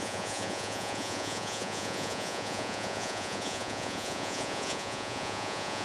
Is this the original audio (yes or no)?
no